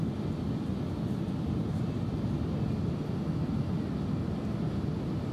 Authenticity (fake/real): real